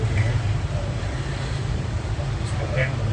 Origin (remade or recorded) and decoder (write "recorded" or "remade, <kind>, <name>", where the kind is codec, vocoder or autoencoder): remade, vocoder, BigVGAN v2